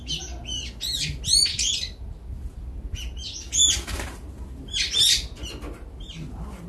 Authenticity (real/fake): real